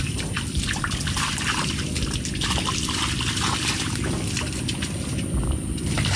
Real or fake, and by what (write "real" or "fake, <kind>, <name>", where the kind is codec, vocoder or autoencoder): real